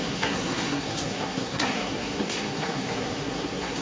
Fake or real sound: fake